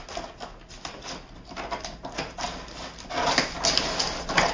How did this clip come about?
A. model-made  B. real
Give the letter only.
B